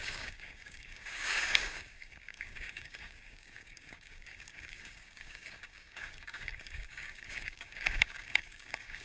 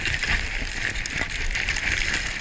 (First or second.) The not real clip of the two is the first